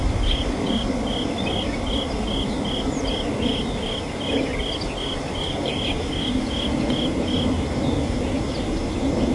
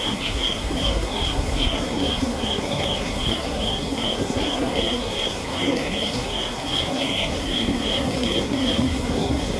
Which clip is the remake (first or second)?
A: second